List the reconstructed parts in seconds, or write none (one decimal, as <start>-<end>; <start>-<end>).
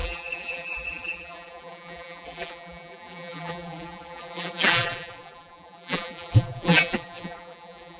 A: 0.0-8.0